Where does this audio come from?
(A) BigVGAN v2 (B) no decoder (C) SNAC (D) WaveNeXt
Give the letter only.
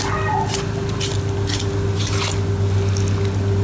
B